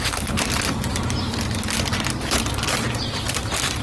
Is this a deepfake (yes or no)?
no